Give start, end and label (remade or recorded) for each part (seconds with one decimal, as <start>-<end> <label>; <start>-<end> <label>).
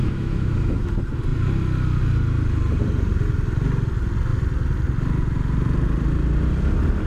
0.0-0.9 remade; 0.9-7.1 recorded